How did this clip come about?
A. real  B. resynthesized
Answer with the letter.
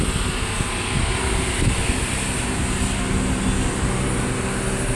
A